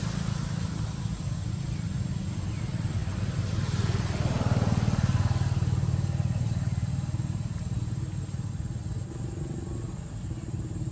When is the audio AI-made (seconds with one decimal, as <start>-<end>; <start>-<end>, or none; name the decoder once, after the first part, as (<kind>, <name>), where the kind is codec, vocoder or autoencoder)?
none